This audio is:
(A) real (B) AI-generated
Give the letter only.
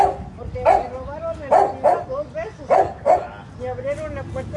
A